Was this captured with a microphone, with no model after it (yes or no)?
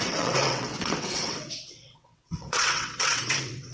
no